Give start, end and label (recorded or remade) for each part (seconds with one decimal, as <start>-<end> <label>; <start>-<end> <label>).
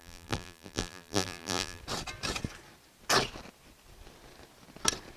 0.0-1.8 remade; 1.8-5.2 recorded